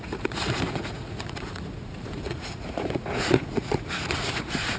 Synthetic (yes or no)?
yes